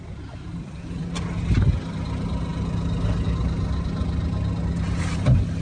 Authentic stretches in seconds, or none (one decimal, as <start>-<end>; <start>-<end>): 0.0-5.6